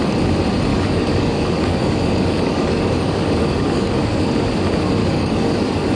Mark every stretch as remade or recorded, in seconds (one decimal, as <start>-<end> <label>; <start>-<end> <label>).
0.0-0.7 recorded; 0.7-4.3 remade; 4.3-5.0 recorded; 5.0-6.0 remade